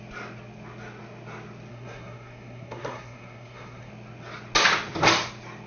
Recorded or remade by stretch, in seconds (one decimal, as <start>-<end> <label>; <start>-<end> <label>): 0.0-1.7 recorded; 1.7-3.9 remade; 3.9-5.7 recorded